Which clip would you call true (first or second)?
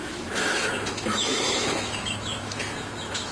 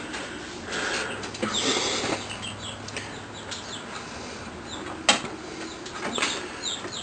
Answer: second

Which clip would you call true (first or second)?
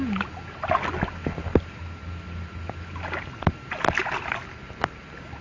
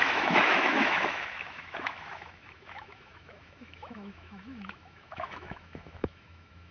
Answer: first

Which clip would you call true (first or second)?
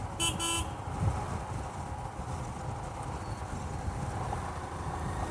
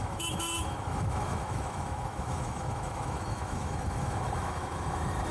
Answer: first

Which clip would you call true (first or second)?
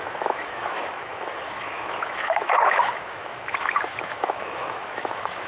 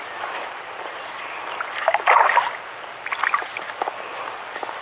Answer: second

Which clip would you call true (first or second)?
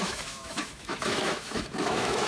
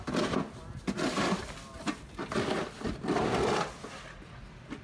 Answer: second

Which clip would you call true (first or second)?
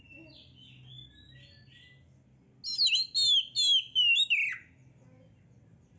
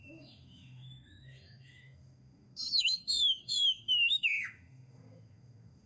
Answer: first